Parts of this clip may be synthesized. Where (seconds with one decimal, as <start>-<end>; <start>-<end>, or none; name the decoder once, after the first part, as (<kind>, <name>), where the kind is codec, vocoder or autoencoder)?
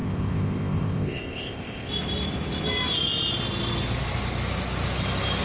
0.0-1.9 (codec, ZipCodec)